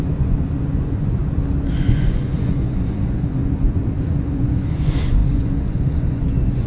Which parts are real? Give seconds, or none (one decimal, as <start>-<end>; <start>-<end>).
1.2-1.8